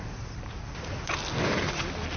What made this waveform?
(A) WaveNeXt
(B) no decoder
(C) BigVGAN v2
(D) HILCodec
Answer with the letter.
B